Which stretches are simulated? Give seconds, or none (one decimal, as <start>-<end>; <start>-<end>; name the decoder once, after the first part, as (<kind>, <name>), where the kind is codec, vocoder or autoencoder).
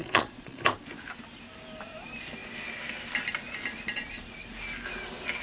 0.0-0.6 (vocoder, Vocos)